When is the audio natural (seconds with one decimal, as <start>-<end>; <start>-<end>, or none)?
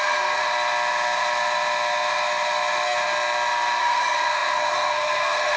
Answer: 0.4-3.8